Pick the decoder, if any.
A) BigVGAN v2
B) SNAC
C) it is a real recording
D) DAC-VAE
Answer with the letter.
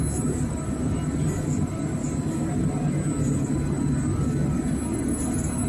C